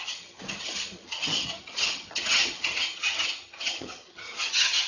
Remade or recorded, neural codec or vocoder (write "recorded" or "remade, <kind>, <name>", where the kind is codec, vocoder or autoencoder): remade, vocoder, HiFi-GAN